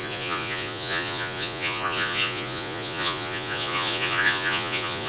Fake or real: fake